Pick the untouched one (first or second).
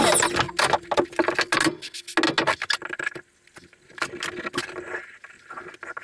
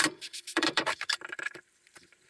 first